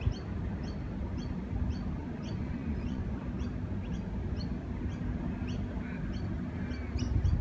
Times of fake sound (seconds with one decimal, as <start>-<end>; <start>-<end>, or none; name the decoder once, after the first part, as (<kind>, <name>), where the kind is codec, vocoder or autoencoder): 2.0-3.2 (vocoder, Vocos)